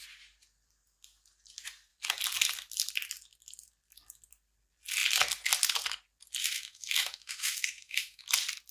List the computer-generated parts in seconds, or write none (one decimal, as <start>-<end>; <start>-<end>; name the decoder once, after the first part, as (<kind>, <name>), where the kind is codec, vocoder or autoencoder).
6.4-8.2 (autoencoder, DAC-VAE)